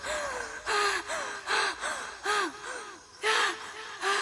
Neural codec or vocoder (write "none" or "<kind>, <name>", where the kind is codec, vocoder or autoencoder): none